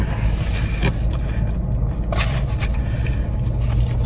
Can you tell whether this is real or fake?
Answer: real